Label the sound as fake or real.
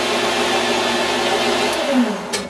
real